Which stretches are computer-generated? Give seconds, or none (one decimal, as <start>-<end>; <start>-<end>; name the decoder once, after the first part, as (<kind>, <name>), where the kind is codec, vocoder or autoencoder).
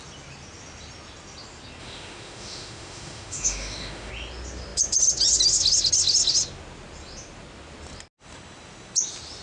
1.8-4.1 (autoencoder, DAC-VAE)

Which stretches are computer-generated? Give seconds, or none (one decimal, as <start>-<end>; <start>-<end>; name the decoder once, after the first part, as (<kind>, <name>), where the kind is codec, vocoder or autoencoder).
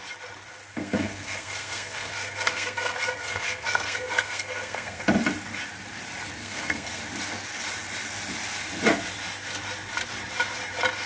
0.7-5.0 (codec, SNAC); 6.4-7.0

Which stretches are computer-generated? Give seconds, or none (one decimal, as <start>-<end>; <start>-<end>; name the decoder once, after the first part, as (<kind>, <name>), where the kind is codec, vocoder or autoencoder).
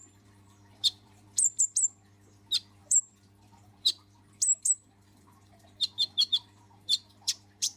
0.0-1.6 (vocoder, BigVGAN v2); 2.8-7.8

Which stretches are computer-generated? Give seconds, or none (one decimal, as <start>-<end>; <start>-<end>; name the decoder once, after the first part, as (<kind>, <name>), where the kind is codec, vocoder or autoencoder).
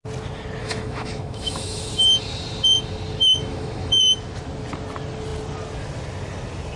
0.6-1.9 (autoencoder, DAC-VAE); 3.4-4.0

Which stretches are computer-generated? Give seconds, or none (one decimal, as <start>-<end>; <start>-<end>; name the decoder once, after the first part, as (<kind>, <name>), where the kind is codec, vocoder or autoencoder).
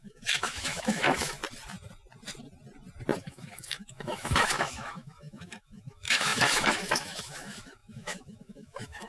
0.0-1.4 (autoencoder, DAC-VAE); 3.2-9.1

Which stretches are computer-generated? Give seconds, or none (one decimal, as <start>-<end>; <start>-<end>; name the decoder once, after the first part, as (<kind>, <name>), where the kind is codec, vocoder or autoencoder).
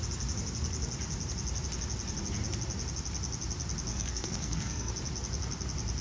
3.9-4.9 (codec, SNAC)